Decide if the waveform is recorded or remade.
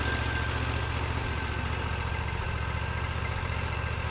recorded